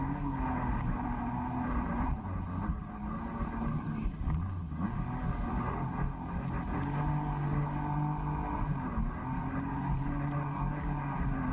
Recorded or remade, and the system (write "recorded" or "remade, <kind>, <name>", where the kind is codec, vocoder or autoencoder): recorded